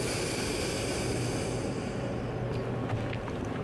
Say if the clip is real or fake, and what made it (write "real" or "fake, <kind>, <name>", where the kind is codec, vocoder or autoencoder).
real